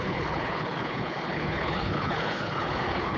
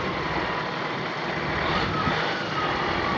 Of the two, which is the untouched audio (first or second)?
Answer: second